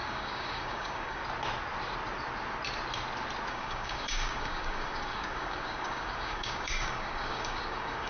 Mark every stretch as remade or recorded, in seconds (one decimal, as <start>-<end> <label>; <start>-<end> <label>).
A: 0.0-1.2 remade; 1.2-3.5 recorded; 3.5-8.1 remade